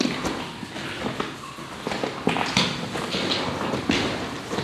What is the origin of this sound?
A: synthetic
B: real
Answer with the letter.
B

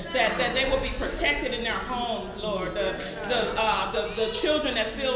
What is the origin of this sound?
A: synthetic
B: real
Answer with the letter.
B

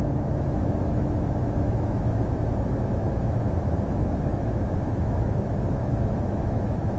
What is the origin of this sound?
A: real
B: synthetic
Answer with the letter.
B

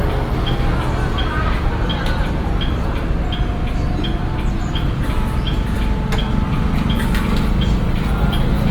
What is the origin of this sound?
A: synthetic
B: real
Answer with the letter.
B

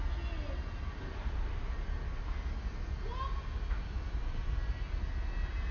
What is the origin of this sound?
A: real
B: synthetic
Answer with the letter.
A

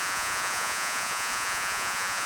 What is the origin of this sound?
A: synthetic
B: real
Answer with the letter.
A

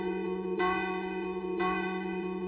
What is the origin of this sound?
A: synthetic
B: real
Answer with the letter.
A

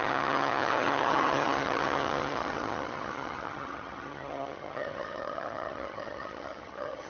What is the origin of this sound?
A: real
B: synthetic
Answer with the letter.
B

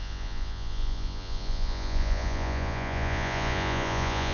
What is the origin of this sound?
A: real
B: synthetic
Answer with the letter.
B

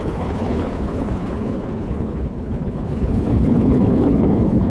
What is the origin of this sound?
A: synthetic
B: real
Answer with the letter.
A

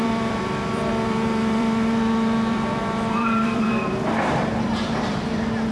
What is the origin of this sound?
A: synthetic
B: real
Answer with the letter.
A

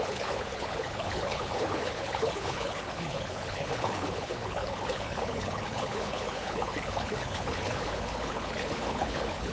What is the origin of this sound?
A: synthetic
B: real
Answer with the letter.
A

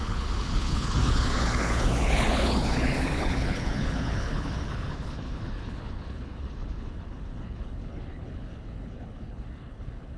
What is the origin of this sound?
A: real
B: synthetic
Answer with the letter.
B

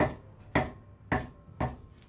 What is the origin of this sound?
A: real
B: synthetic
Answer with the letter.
A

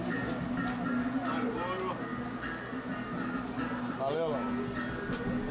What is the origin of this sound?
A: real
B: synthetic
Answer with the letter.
A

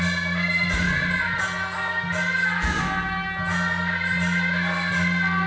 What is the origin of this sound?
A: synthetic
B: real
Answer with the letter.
B